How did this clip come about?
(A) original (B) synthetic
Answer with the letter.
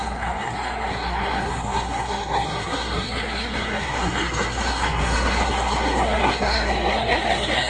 B